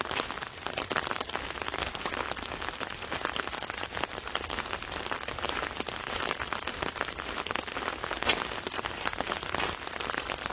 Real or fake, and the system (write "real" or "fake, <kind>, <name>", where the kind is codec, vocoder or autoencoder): real